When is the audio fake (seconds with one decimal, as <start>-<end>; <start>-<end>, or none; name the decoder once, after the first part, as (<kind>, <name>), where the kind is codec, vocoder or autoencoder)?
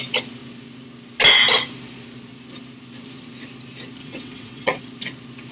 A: 4.0-4.8 (vocoder, WaveNeXt)